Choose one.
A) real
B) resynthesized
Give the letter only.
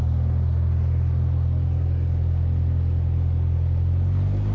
A